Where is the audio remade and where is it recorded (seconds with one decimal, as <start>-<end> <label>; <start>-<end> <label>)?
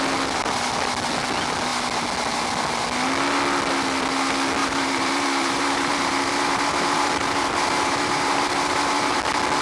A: 0.0-4.6 recorded; 4.6-9.2 remade; 9.2-9.6 recorded